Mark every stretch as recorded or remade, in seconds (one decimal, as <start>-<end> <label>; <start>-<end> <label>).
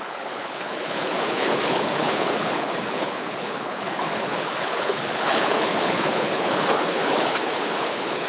0.0-8.3 remade